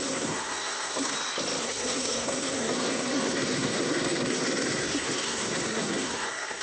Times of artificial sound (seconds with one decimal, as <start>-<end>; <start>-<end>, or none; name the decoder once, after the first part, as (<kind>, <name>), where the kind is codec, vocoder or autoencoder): 0.0-1.1 (codec, SNAC); 1.6-6.6